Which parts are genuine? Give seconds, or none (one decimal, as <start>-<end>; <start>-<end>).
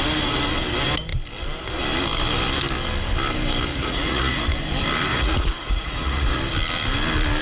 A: 0.0-3.7; 4.4-5.1; 6.4-7.4